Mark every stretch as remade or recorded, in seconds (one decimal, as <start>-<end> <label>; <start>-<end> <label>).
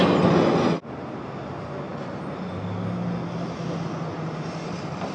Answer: 0.0-5.1 recorded